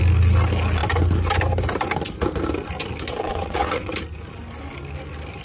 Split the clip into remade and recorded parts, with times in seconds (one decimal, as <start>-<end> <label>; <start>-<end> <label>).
0.0-3.1 recorded; 3.1-3.9 remade; 3.9-5.4 recorded